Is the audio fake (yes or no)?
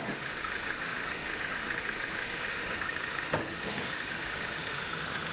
yes